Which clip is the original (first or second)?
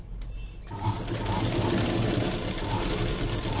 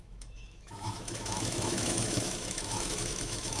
first